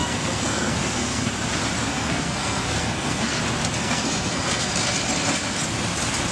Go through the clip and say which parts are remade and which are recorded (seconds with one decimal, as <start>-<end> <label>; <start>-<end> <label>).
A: 0.0-1.3 remade; 1.3-1.9 recorded; 1.9-3.4 remade; 3.4-3.8 recorded; 3.8-4.7 remade; 4.7-6.3 recorded